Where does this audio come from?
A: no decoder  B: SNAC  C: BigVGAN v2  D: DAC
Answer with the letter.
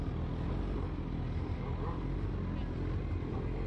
A